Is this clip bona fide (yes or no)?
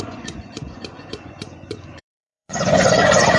no